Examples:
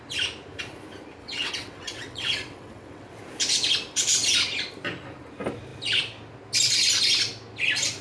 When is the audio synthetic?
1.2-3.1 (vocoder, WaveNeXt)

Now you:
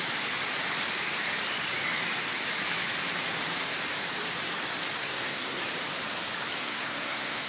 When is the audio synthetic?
5.0-5.6 (codec, SNAC); 6.6-7.5

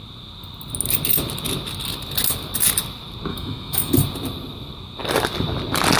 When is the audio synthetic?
3.3-3.9 (autoencoder, DAC-VAE)

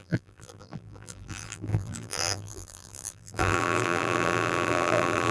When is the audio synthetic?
0.0-5.3 (vocoder, BigVGAN v2)

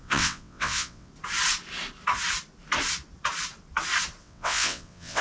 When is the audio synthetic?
0.0-1.1 (vocoder, WaveNeXt); 4.2-5.2

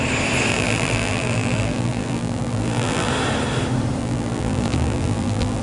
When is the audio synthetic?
0.5-3.1 (vocoder, BigVGAN v2); 4.0-5.6

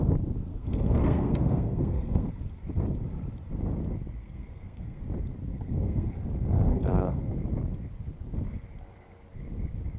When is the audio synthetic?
0.5-2.3 (codec, SNAC); 4.2-5.0; 5.5-6.1; 6.7-7.3

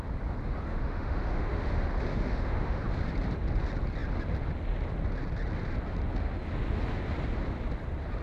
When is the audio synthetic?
0.7-1.7 (autoencoder, DAC-VAE); 2.1-2.8